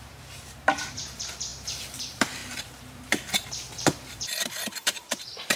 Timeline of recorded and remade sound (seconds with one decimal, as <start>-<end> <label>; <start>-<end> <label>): 0.0-5.6 remade